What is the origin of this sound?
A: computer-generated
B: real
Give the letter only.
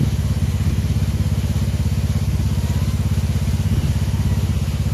B